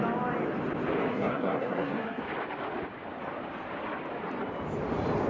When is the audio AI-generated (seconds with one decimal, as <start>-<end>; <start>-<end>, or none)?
1.1-2.2